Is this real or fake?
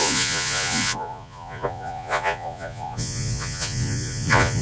fake